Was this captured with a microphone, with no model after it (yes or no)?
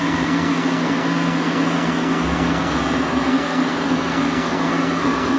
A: no